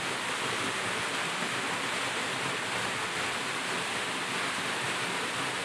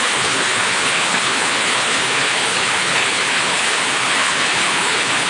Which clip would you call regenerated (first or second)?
second